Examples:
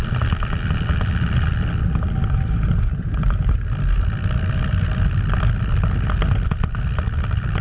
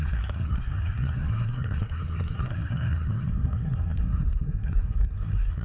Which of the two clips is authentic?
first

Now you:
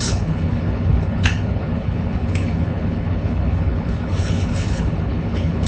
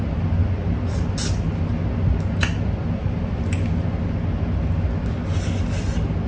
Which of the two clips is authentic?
second